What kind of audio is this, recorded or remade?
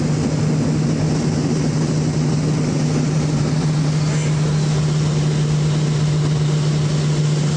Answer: recorded